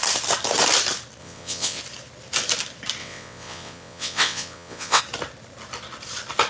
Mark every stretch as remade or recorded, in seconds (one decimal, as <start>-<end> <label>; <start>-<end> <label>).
0.0-1.2 recorded; 1.2-1.8 remade; 1.8-3.0 recorded; 3.0-5.0 remade; 5.0-6.5 recorded